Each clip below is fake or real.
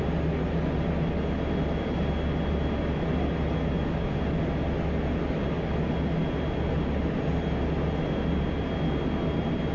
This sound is real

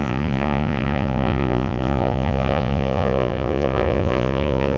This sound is fake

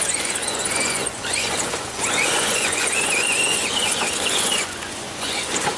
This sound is fake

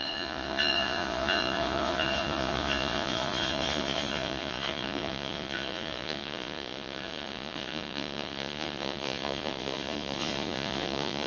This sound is fake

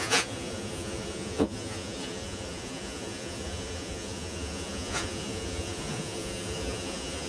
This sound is fake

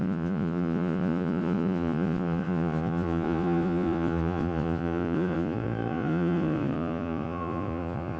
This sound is fake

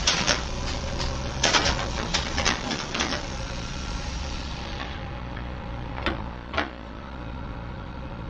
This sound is fake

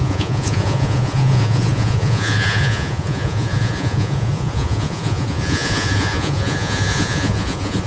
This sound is fake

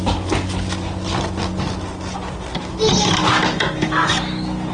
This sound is real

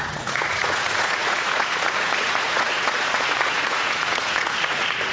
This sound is fake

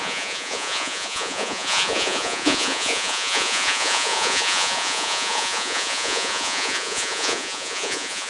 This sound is fake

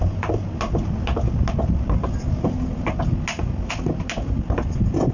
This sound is real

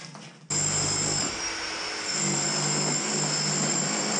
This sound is real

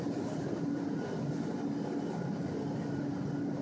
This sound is real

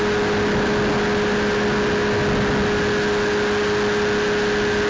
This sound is real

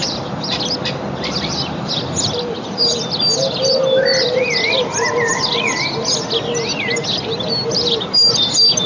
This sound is real